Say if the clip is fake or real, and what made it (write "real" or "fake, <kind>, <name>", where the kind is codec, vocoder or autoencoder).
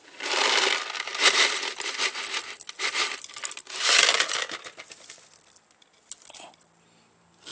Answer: real